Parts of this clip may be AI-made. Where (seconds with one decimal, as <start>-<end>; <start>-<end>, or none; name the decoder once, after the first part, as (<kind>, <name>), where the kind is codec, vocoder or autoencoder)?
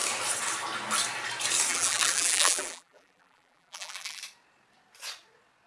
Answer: 1.7-4.2 (vocoder, BigVGAN v2)